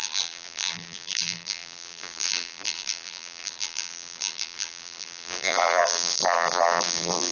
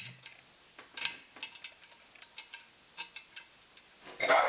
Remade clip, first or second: first